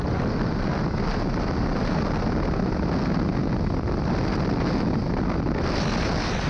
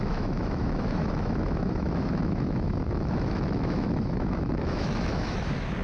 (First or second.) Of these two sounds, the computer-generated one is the second